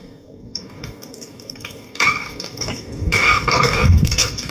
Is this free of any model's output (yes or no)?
no